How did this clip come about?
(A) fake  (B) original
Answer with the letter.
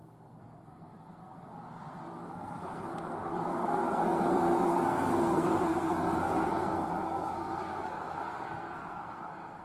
A